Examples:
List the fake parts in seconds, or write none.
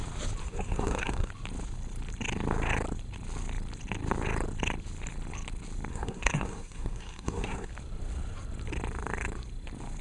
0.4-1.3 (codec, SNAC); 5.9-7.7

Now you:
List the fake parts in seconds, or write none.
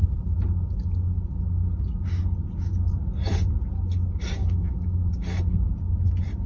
4.4-5.1 (autoencoder, DAC-VAE)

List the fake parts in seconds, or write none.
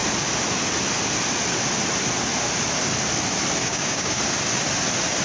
3.6-4.2 (codec, DAC)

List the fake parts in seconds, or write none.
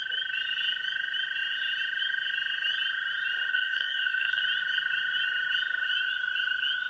3.5-4.4 (codec, SNAC)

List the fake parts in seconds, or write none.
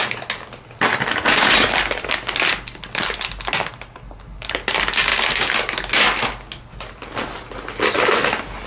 none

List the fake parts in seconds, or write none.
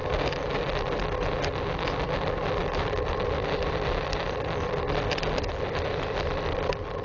none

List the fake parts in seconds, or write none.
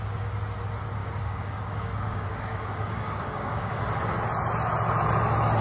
1.0-3.8 (codec, DAC)